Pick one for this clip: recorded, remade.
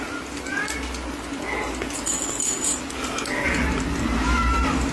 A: recorded